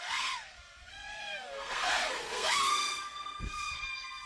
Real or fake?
fake